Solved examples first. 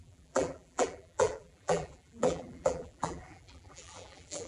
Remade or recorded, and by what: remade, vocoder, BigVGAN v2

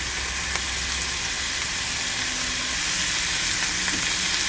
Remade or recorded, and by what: recorded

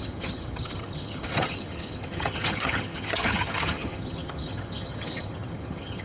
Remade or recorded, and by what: remade, vocoder, HiFi-GAN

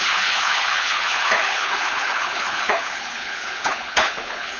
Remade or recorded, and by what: remade, codec, HILCodec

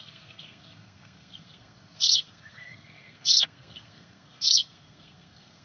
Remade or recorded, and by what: remade, codec, SNAC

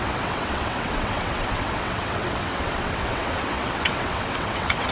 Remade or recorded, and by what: remade, vocoder, WaveNeXt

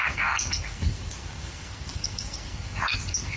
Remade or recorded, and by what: remade, codec, SNAC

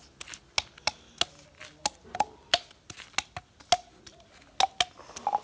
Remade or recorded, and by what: recorded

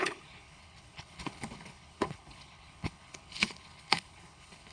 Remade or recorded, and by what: remade, codec, HILCodec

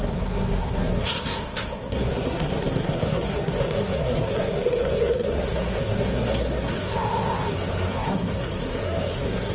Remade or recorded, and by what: remade, codec, SNAC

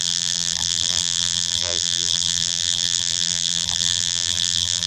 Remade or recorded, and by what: remade, vocoder, BigVGAN v2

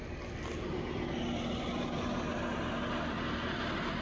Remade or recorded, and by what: recorded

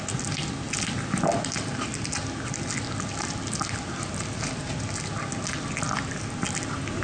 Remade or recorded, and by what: recorded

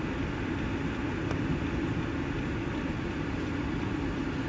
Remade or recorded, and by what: recorded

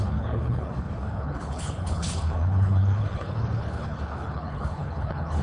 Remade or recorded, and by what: remade, codec, HILCodec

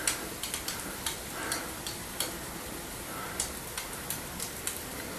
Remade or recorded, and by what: recorded